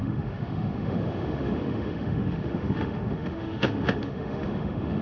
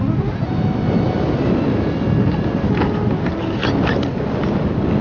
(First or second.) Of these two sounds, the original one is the second